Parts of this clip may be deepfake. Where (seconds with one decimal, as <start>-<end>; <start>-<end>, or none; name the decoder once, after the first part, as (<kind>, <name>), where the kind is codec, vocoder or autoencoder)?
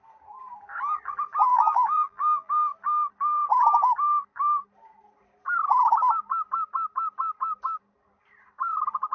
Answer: 1.5-2.5 (vocoder, BigVGAN v2)